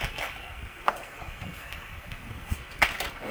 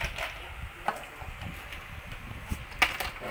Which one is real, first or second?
second